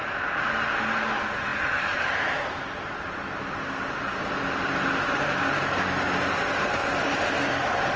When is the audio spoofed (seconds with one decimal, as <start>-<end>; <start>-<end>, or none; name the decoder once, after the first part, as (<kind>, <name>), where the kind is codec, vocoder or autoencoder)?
none